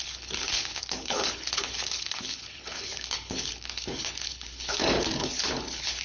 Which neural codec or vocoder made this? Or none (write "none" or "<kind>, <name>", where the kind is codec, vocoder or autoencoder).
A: codec, HILCodec